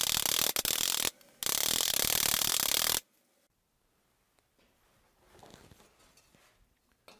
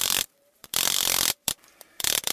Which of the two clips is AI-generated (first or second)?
second